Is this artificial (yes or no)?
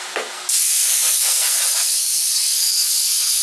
yes